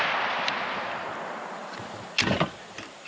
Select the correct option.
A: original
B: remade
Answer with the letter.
A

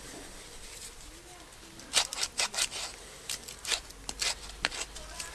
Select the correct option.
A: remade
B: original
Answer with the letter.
B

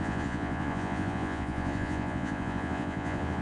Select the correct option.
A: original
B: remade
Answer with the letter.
B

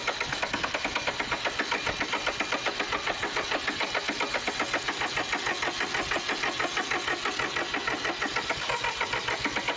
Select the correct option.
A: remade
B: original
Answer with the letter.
B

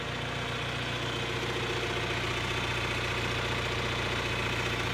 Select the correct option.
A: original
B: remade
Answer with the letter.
A